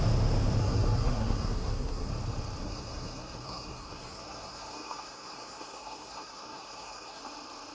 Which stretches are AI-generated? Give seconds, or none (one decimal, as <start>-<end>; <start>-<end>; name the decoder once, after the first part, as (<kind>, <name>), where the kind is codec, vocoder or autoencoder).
0.6-2.1 (codec, SNAC); 2.6-7.2